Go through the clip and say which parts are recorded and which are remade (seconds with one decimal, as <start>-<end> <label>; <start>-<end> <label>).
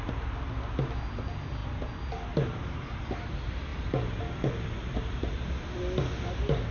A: 0.0-6.7 recorded